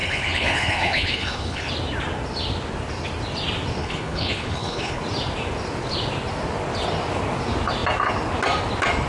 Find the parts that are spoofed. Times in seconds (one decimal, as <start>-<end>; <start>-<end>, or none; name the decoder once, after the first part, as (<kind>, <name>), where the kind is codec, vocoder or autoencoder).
0.0-1.7 (codec, HILCodec); 3.8-5.0